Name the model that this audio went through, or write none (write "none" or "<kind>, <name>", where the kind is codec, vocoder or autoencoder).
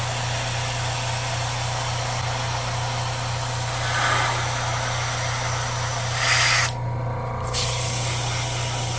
none